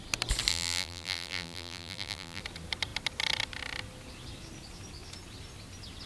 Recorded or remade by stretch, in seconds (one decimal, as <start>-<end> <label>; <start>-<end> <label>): 0.0-0.5 recorded; 0.5-2.4 remade; 2.4-6.1 recorded